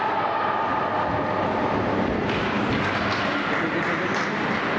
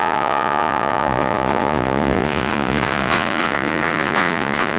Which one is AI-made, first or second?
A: second